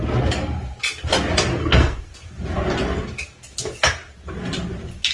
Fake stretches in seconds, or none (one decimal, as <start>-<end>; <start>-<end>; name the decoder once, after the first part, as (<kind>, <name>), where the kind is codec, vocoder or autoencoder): 1.6-2.1 (codec, SNAC)